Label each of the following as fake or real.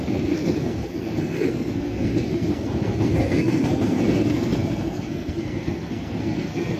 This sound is fake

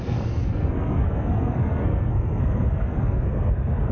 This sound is fake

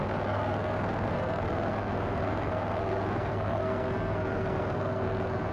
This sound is fake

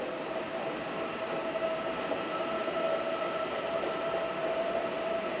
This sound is real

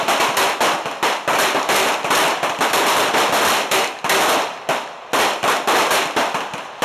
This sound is real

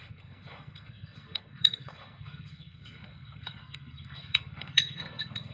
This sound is fake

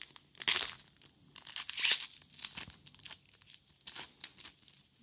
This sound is real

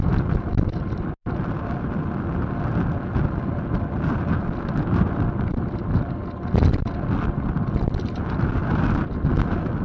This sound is real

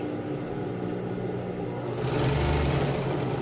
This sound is real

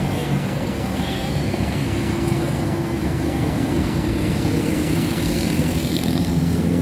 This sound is fake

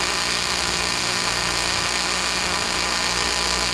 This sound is fake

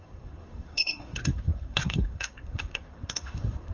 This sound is fake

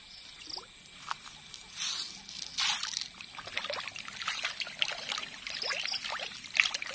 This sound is real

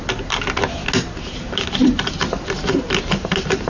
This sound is real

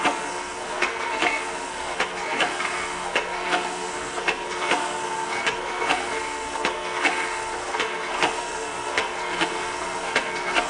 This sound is fake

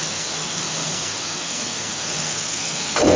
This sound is fake